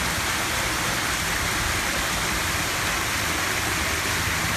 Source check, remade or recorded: recorded